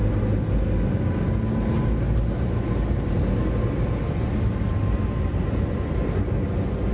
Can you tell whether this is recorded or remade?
recorded